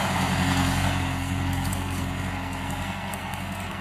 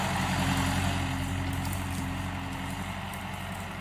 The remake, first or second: first